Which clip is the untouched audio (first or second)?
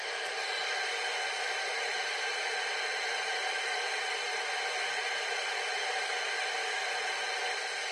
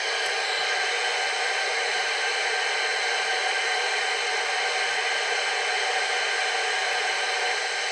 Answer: second